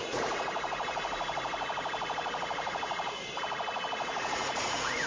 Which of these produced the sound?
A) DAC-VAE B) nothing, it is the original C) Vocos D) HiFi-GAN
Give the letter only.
C